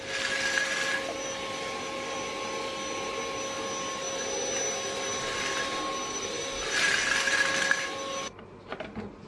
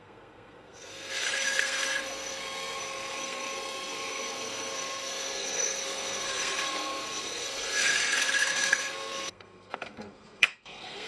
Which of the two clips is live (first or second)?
first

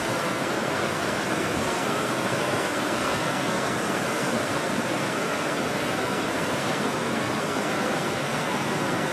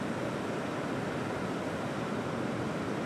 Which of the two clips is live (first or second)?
second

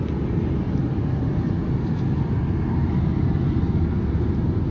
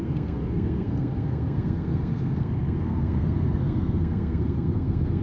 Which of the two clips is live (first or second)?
first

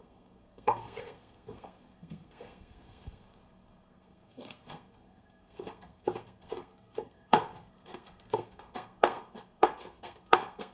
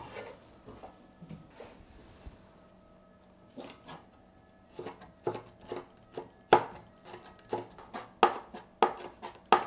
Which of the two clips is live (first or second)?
second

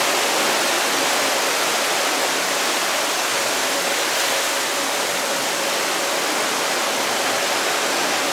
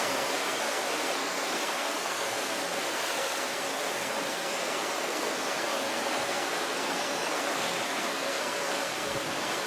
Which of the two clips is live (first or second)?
first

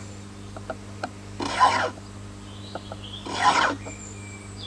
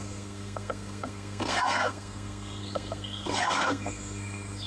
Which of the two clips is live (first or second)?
first